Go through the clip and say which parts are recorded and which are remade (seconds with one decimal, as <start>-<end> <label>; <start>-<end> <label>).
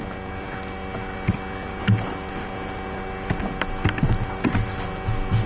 0.0-5.5 recorded